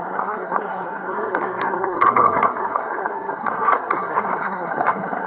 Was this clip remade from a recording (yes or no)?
yes